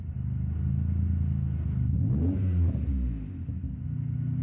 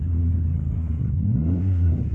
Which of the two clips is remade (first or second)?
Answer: second